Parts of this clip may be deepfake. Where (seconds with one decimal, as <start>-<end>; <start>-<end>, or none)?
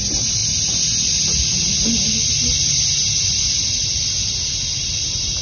none